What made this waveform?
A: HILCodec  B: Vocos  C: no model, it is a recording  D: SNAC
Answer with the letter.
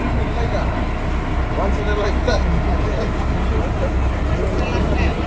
C